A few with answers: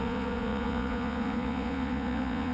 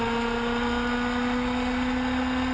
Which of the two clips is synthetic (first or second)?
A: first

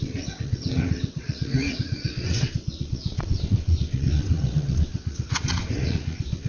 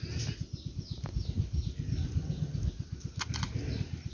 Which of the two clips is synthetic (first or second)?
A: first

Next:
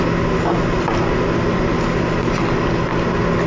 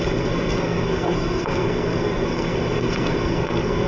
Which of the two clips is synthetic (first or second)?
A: second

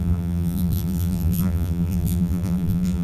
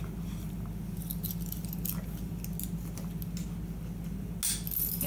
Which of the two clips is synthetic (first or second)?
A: first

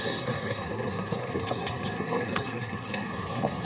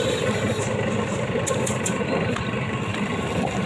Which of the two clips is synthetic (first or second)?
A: first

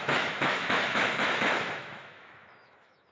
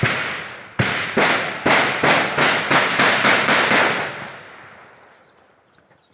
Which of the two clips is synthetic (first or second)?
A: first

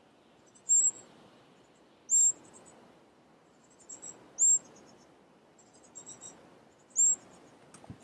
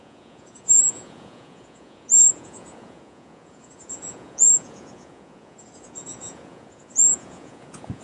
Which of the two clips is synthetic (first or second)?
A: second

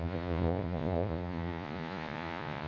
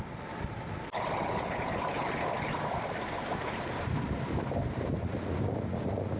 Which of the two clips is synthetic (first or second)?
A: first